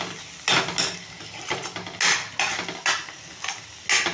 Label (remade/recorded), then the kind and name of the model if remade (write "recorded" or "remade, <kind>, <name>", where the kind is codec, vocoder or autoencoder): recorded